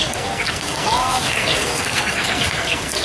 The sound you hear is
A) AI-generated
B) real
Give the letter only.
A